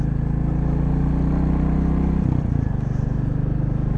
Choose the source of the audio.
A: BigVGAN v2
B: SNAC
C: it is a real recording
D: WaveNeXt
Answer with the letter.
C